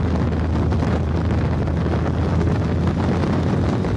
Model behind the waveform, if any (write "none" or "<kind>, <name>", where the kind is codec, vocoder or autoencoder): none